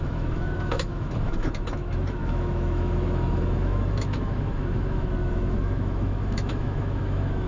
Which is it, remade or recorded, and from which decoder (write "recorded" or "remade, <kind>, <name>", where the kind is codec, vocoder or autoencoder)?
remade, autoencoder, DAC-VAE